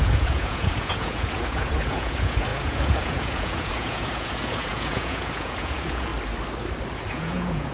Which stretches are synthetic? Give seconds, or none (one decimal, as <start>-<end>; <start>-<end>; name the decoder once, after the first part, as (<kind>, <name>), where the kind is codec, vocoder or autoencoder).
0.0-6.1 (vocoder, Vocos); 7.1-7.7